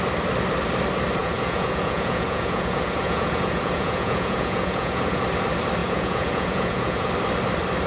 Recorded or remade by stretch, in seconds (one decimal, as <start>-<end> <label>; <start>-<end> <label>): 0.0-1.2 recorded; 1.2-5.2 remade; 5.2-5.8 recorded; 5.8-7.1 remade; 7.1-7.9 recorded